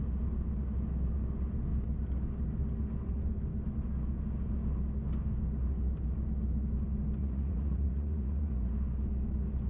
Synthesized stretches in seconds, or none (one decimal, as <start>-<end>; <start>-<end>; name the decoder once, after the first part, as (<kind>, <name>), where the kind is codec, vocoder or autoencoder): 7.2-8.7 (vocoder, Vocos)